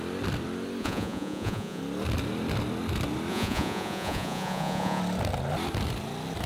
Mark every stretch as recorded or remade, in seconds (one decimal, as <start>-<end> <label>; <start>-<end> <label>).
0.0-0.8 recorded; 0.8-1.8 remade; 1.8-3.3 recorded; 3.3-5.0 remade; 5.0-6.5 recorded

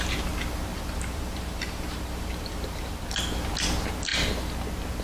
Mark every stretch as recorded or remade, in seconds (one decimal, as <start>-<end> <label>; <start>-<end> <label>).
0.0-0.7 recorded; 0.7-3.0 remade; 3.0-5.0 recorded

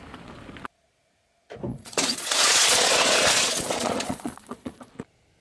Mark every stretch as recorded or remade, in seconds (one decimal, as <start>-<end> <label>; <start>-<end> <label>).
0.0-1.7 recorded; 1.7-4.9 remade; 4.9-5.4 recorded

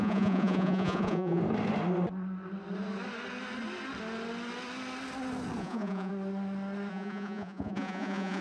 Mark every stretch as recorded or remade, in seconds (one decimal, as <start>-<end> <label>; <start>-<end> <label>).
0.0-1.4 remade; 1.4-5.6 recorded; 5.6-6.1 remade; 6.1-6.9 recorded; 6.9-8.4 remade

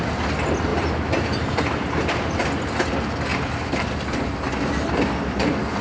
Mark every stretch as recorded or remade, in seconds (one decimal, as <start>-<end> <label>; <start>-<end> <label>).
0.0-5.8 recorded

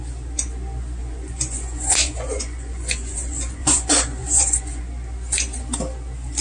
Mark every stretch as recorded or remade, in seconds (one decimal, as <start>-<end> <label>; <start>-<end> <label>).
0.0-1.0 recorded; 1.0-4.8 remade; 4.8-6.4 recorded

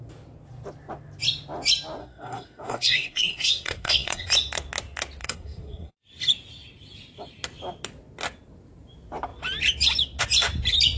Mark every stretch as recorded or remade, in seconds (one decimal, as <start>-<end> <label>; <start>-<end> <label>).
0.0-2.0 recorded; 2.0-4.3 remade; 4.3-5.2 recorded; 5.2-5.9 remade; 5.9-11.0 recorded

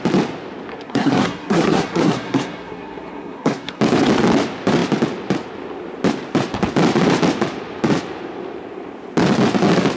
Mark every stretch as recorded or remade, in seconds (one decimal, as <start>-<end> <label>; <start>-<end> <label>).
0.0-0.7 recorded; 0.7-3.8 remade; 3.8-10.0 recorded